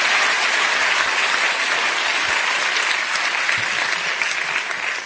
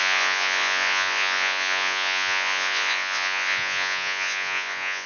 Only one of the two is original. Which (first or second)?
first